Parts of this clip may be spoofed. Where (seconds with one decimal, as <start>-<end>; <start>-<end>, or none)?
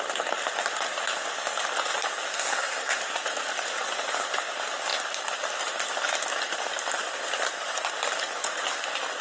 2.3-3.0